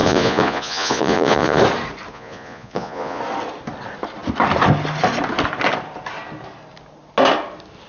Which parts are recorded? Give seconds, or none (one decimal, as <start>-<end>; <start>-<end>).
1.6-2.1; 3.2-7.9